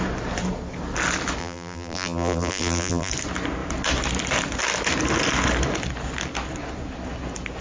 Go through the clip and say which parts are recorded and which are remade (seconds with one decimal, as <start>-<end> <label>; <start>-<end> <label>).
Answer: 0.0-1.4 recorded; 1.4-3.1 remade; 3.1-7.6 recorded